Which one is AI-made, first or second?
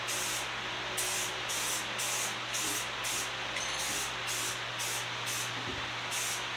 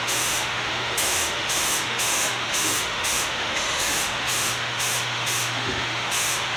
second